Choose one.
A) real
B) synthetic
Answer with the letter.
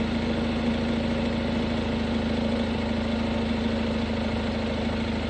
A